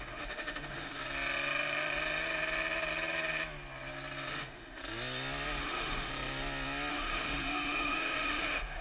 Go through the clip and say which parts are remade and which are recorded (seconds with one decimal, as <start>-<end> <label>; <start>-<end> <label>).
0.0-1.0 remade; 1.0-4.3 recorded; 4.3-4.8 remade; 4.8-5.6 recorded; 5.6-6.1 remade; 6.1-6.9 recorded; 6.9-8.8 remade